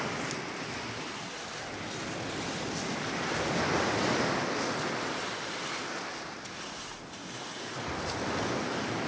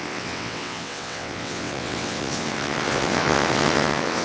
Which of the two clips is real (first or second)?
first